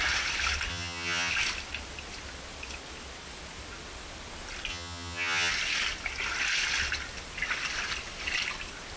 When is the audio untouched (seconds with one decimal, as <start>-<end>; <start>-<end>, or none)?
0.0-0.7; 1.3-4.7; 5.5-9.0